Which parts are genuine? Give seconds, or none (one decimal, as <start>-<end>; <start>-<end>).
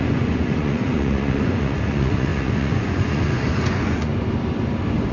4.1-5.1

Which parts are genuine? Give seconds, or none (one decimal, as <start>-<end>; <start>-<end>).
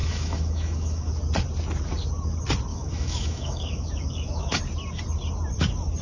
1.1-2.7; 4.6-6.0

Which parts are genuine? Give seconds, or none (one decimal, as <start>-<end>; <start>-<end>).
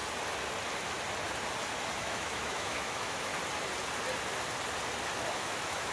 0.0-1.9; 3.3-5.3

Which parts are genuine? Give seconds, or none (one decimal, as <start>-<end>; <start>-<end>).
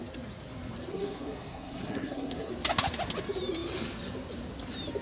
0.0-0.9; 2.5-5.0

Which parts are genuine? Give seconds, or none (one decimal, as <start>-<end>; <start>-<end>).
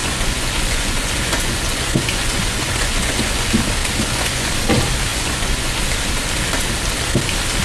3.5-4.0; 4.5-5.1; 5.8-7.6